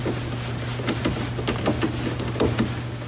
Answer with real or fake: real